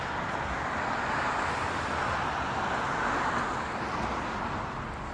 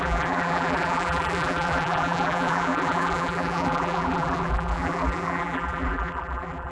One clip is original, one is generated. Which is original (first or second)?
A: first